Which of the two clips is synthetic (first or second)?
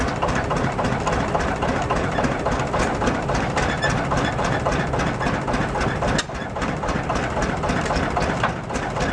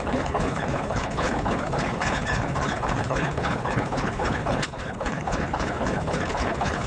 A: second